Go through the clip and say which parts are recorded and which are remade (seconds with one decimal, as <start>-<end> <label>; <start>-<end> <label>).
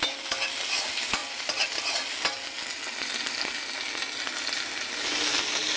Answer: 0.0-5.8 recorded